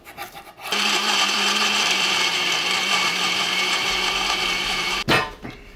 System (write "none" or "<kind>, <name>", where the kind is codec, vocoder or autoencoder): vocoder, BigVGAN v2